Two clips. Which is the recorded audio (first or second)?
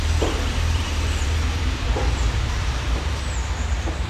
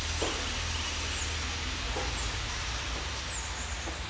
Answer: second